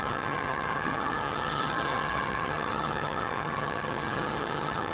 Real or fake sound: fake